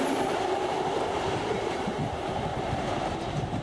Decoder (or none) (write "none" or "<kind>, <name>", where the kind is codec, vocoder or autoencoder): vocoder, BigVGAN v2